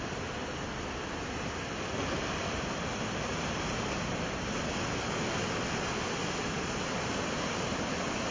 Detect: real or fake real